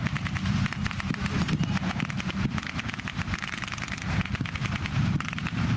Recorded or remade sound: remade